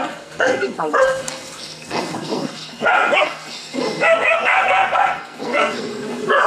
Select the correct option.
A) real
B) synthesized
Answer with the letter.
B